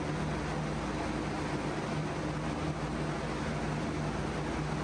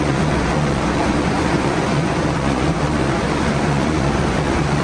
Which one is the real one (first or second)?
first